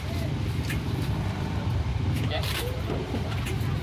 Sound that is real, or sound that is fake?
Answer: fake